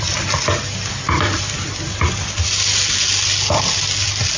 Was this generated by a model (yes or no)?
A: no